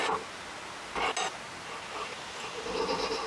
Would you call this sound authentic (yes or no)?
yes